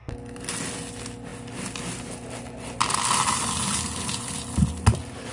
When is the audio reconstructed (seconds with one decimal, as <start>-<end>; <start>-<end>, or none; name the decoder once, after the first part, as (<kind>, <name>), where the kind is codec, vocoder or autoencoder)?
none